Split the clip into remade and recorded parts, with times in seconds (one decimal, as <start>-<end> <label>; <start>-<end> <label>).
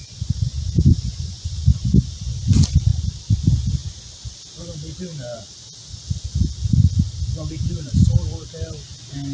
0.0-2.4 remade; 2.4-9.3 recorded